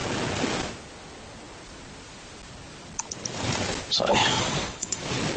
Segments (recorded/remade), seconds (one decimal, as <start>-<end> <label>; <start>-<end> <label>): 0.0-4.1 recorded; 4.1-5.0 remade; 5.0-5.4 recorded